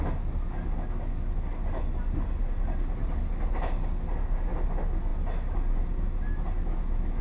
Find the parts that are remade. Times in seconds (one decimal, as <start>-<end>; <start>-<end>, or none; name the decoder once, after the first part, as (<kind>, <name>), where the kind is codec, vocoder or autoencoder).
none